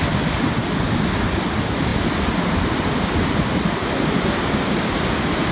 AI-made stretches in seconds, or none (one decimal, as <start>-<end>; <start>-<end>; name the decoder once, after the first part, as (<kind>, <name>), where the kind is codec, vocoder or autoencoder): none